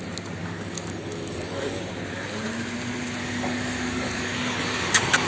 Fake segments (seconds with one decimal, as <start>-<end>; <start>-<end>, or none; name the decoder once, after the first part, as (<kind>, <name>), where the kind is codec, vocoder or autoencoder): 0.4-1.8 (codec, DAC); 3.2-5.3